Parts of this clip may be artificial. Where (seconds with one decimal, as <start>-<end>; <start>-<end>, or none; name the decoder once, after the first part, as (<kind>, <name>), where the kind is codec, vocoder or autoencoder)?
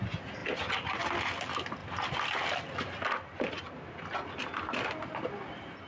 none